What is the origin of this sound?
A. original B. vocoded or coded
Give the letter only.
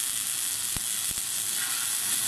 A